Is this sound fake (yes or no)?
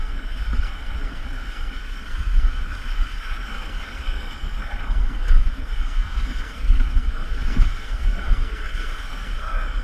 yes